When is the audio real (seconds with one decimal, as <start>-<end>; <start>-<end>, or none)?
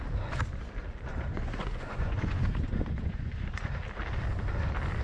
0.0-1.1; 3.7-5.0